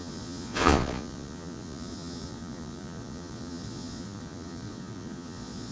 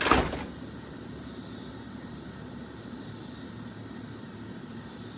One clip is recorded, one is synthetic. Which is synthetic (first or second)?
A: first